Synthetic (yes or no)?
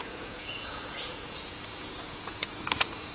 yes